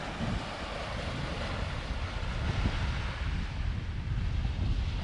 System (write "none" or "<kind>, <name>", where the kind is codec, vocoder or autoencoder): none